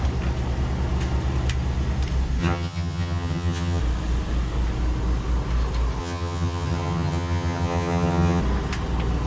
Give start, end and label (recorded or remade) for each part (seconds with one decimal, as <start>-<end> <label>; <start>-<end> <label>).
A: 0.0-2.4 recorded; 2.4-3.8 remade; 3.8-6.0 recorded; 6.0-8.4 remade; 8.4-9.3 recorded